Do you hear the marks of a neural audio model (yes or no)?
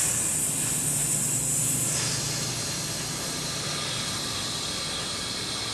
no